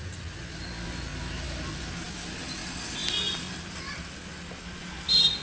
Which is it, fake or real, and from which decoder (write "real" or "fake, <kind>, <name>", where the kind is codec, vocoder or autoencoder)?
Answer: real